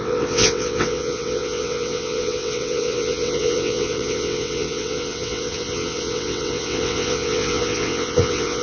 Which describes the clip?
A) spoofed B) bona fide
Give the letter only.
A